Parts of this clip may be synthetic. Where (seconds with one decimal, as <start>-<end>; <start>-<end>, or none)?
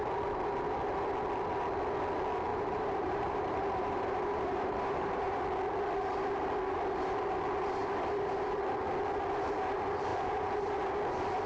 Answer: 2.5-5.4; 10.1-10.7